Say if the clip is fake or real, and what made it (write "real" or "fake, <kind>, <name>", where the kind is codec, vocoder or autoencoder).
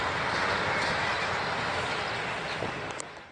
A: real